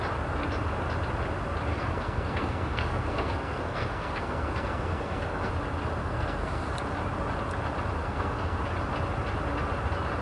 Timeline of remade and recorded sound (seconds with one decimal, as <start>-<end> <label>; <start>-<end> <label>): 0.0-1.7 recorded; 1.7-5.5 remade; 5.5-6.0 recorded; 6.0-6.7 remade; 6.7-8.0 recorded; 8.0-8.6 remade; 8.6-10.2 recorded